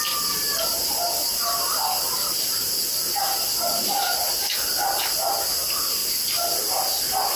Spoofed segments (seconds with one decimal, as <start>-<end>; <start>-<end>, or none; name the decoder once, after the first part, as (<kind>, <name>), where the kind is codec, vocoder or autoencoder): none